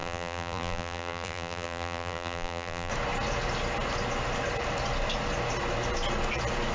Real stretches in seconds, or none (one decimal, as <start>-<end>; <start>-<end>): 2.9-6.7